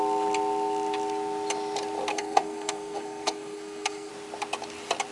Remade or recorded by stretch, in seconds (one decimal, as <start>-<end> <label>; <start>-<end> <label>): 0.0-2.1 recorded; 2.1-4.1 remade; 4.1-5.1 recorded